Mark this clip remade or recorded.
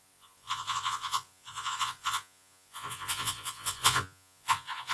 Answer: remade